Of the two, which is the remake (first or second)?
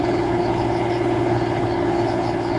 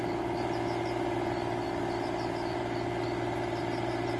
first